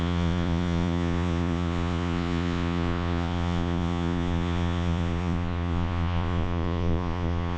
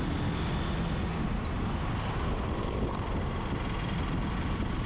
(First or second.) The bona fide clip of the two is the second